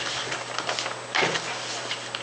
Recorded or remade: recorded